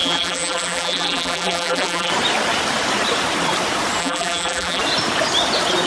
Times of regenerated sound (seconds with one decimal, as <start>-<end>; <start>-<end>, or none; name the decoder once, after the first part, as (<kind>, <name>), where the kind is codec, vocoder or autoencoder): 0.0-2.1 (vocoder, BigVGAN v2); 4.0-4.8